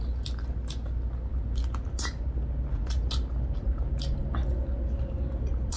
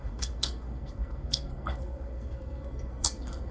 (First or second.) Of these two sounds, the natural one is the first